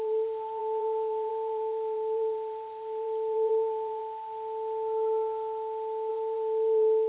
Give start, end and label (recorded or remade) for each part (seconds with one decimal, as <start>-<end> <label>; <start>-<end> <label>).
0.0-4.0 remade; 4.0-6.1 recorded; 6.1-7.1 remade